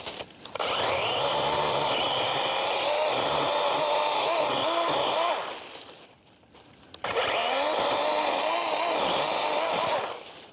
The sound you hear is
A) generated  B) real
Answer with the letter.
B